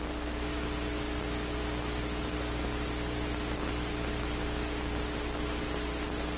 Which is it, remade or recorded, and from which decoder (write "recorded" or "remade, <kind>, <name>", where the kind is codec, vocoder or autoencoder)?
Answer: recorded